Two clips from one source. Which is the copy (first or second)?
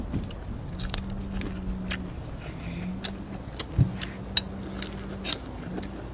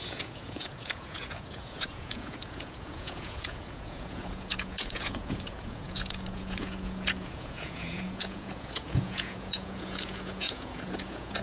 second